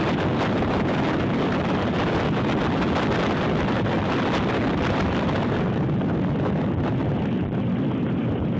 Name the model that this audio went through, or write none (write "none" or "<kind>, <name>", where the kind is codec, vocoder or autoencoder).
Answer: none